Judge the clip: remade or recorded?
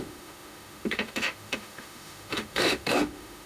remade